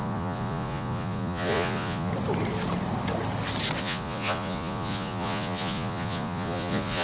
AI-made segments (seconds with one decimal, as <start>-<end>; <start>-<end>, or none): 0.0-2.1; 3.8-7.0